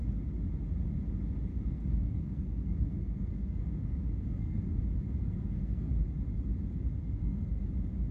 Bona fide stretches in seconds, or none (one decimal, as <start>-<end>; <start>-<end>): 0.0-1.5; 4.8-5.2; 5.9-7.0; 7.6-8.1